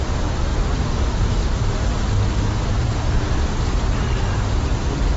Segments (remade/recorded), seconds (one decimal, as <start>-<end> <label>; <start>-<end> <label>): 0.0-5.2 recorded